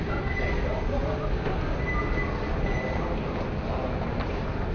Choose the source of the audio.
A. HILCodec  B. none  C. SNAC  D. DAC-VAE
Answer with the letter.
B